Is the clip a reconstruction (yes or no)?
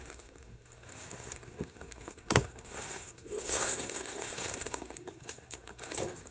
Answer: yes